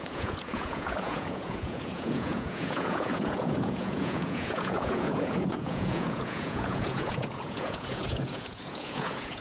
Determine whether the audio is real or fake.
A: fake